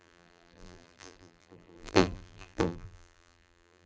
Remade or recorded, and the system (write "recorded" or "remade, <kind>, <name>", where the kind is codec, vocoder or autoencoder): remade, vocoder, BigVGAN v2